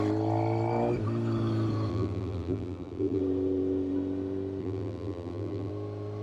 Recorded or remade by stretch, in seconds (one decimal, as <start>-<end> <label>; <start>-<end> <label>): 0.0-1.9 recorded; 1.9-3.2 remade; 3.2-4.6 recorded; 4.6-5.7 remade; 5.7-6.2 recorded